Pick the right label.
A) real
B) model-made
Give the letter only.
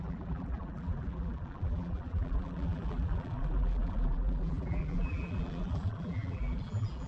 B